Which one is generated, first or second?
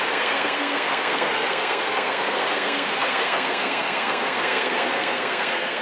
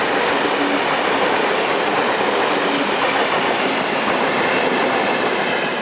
first